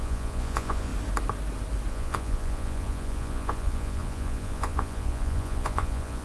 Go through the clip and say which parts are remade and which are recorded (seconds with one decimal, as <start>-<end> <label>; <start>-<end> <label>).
0.0-0.9 remade; 0.9-1.9 recorded; 1.9-6.2 remade